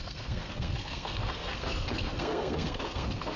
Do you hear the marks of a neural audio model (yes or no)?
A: yes